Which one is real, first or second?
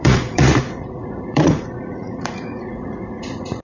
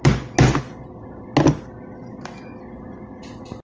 second